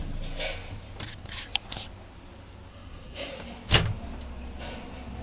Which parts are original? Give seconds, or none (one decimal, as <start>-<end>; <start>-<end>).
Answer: 0.0-2.7; 3.3-5.2